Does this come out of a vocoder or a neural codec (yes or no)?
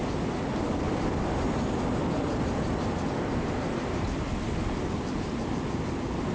no